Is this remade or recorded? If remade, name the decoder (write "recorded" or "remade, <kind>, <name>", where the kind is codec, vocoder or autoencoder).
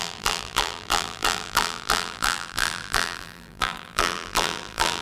remade, vocoder, BigVGAN v2